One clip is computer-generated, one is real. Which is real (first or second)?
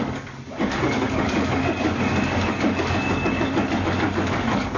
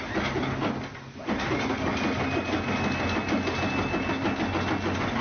second